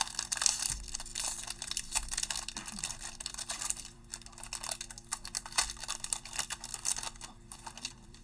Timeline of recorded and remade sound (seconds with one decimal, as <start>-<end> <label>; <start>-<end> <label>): 0.0-1.1 remade; 1.1-1.6 recorded; 1.6-4.1 remade; 4.1-6.0 recorded; 6.0-6.7 remade; 6.7-7.3 recorded; 7.3-8.2 remade